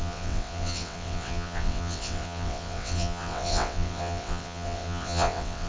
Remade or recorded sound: remade